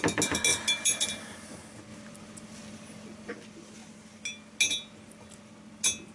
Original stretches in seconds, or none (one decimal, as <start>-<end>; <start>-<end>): 0.0-6.1